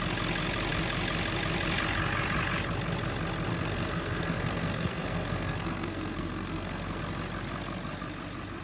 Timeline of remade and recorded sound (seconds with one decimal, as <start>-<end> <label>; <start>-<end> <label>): 0.0-3.5 recorded; 3.5-7.0 remade; 7.0-8.6 recorded